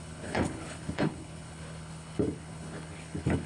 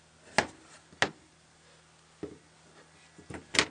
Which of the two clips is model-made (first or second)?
first